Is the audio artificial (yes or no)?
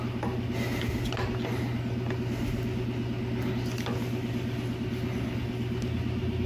no